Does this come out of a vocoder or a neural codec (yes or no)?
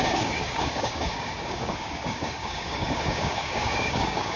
yes